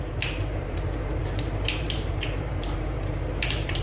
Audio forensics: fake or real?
fake